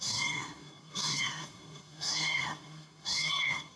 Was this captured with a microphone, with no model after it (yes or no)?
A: no